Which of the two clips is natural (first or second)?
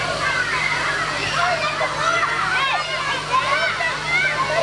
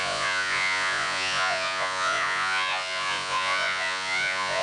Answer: first